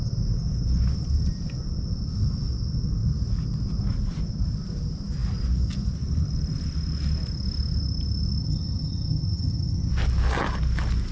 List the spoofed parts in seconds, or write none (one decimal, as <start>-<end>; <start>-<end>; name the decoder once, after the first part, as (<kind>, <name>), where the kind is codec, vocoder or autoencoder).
8.4-9.9 (vocoder, HiFi-GAN)